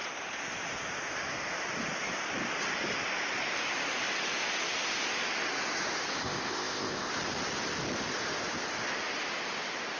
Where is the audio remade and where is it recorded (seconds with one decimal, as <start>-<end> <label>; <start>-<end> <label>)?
0.0-6.2 recorded; 6.2-7.1 remade; 7.1-10.0 recorded